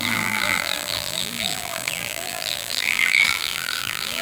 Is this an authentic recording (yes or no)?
no